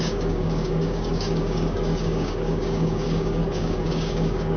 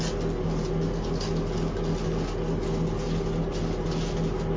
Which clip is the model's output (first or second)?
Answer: first